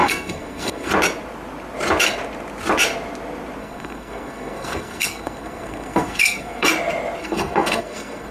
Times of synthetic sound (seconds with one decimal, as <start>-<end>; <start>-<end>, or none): 0.0-0.9; 3.6-6.7; 7.2-8.3